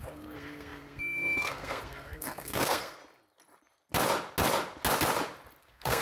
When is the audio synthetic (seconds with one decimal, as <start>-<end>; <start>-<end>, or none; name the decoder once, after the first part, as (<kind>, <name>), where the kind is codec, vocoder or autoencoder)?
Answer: 0.0-3.0 (codec, SNAC); 5.6-6.0